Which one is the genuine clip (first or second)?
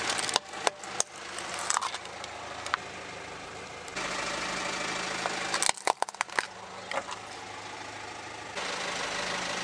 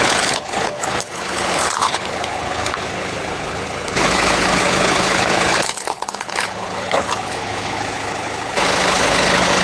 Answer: first